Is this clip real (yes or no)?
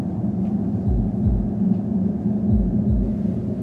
yes